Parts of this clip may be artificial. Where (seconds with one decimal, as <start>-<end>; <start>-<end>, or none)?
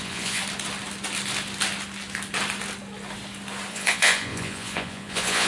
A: 0.0-0.4; 3.7-5.5